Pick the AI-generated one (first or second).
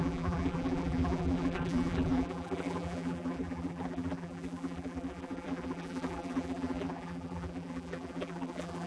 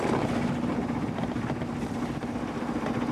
first